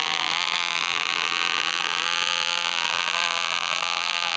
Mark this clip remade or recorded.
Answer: remade